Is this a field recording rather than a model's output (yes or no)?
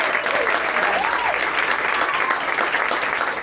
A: yes